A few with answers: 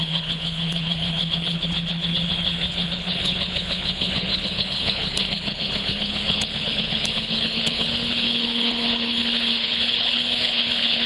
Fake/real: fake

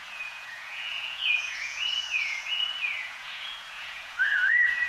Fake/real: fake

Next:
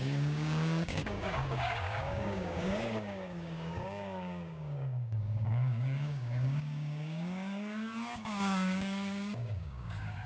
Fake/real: fake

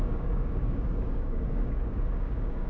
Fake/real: fake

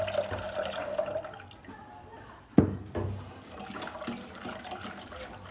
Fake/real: real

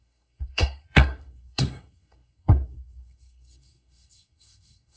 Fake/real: fake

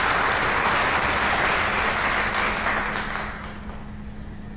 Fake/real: real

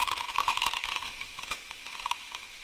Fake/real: fake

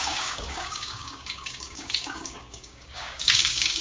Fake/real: fake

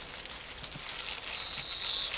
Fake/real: real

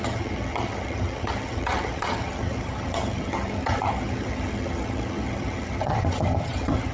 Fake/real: fake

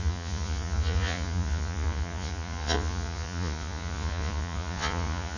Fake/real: fake